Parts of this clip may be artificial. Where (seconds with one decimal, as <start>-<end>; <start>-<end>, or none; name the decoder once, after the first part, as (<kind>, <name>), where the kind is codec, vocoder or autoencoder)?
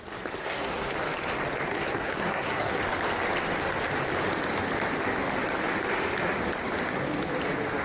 0.4-0.9 (codec, SNAC); 1.7-2.8